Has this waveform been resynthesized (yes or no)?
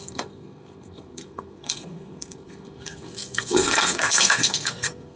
yes